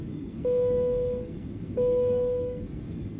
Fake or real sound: fake